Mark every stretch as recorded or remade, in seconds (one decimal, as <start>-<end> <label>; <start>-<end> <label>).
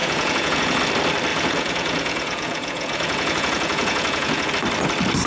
0.0-0.8 remade; 0.8-1.3 recorded; 1.3-4.5 remade; 4.5-5.3 recorded